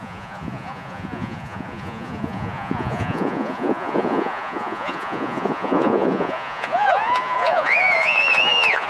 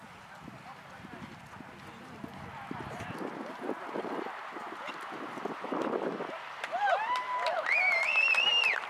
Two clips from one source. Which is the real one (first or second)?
second